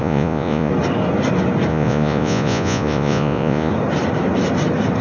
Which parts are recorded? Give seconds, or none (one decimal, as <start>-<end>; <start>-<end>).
0.7-1.7; 3.7-5.0